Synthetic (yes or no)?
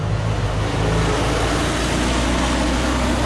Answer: no